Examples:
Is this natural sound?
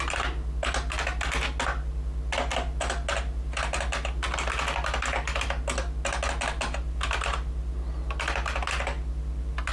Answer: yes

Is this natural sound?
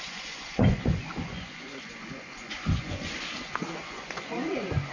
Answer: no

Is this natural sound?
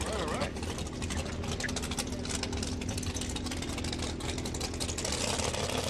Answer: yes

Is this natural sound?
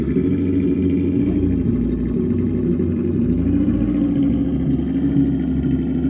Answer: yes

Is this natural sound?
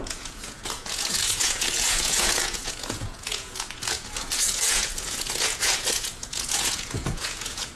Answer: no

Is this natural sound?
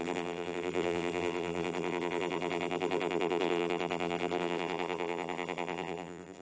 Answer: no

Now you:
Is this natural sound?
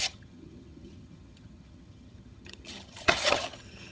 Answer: no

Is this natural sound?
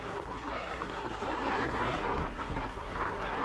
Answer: no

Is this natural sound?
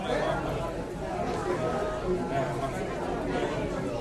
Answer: yes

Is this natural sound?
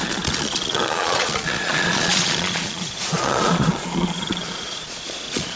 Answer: no